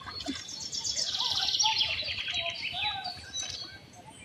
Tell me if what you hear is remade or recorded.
recorded